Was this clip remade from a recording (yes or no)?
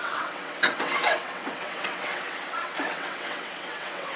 yes